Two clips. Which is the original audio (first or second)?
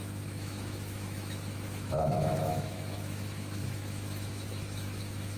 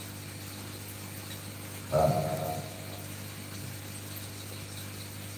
second